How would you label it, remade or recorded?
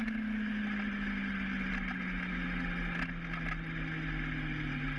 recorded